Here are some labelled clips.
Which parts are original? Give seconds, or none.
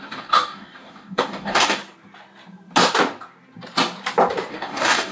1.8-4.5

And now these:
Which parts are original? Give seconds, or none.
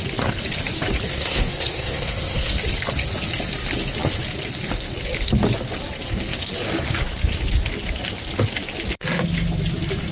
0.0-1.1; 2.5-10.1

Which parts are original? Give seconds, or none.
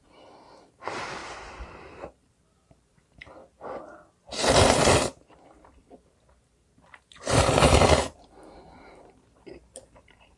3.4-7.2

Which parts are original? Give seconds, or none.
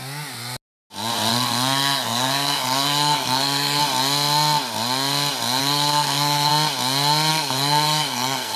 0.0-1.3; 3.8-5.6; 6.5-7.3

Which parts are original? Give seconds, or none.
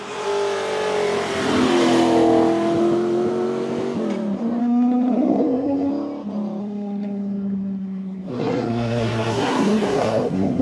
0.0-4.6; 5.9-6.6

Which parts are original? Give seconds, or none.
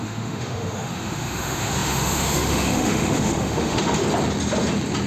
4.0-5.1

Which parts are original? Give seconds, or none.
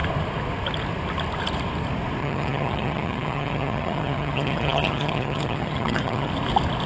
0.0-2.2; 6.3-6.9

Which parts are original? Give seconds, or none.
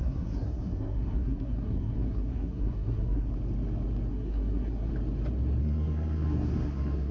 3.3-4.1; 4.9-5.6